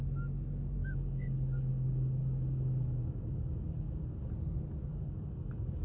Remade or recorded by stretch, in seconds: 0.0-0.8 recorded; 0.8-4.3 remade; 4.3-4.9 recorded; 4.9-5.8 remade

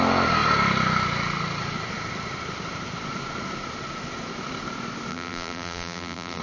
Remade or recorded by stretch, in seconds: 0.0-5.1 recorded; 5.1-6.4 remade

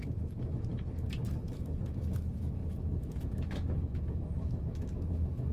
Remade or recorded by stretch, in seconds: 0.0-5.5 remade

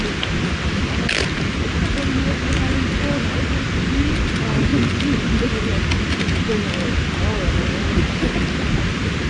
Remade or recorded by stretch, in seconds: 0.0-9.3 recorded

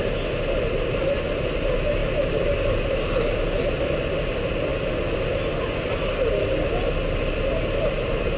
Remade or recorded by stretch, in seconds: 0.0-8.4 recorded

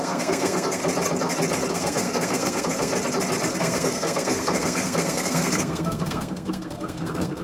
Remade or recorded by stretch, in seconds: 0.0-0.8 remade; 0.8-1.7 recorded; 1.7-2.9 remade; 2.9-3.6 recorded; 3.6-7.4 remade